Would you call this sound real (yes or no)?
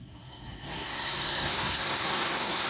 no